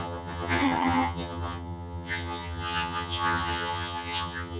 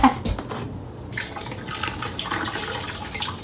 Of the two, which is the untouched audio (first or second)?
second